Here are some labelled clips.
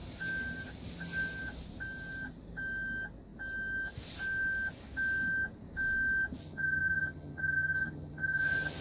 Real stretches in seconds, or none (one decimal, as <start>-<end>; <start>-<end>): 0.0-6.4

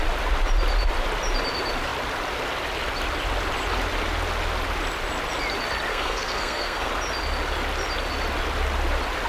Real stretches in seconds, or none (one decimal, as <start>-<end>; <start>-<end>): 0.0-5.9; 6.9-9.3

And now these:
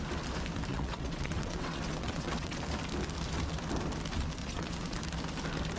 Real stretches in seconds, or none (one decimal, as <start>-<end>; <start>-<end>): 0.0-0.7; 2.6-4.4; 5.0-5.8